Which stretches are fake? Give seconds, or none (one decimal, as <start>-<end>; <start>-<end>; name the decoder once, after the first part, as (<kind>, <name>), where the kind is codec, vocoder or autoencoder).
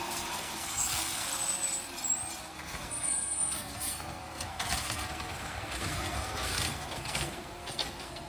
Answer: 0.0-1.3 (codec, SNAC); 2.4-8.3